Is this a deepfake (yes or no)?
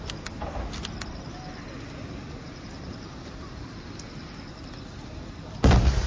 no